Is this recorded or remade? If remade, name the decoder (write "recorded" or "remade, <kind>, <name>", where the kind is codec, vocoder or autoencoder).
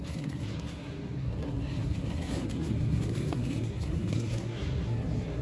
remade, codec, SNAC